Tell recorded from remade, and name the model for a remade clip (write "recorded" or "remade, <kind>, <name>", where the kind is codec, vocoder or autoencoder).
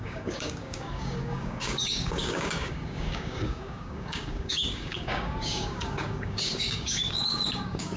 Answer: remade, codec, DAC